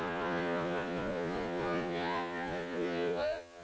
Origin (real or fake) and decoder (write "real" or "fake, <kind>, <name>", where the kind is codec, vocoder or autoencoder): fake, vocoder, Vocos